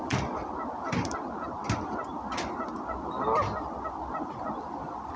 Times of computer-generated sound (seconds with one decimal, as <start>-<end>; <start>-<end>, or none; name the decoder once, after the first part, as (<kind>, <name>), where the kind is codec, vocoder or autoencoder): none